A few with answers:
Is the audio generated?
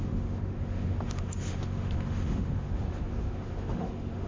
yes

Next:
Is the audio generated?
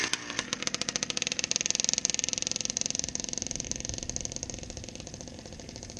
no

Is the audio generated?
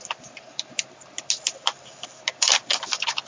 no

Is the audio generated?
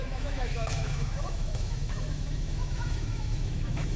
yes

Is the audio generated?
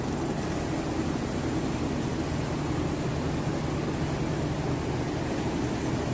no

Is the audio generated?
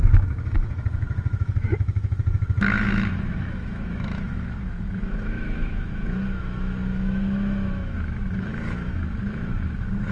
yes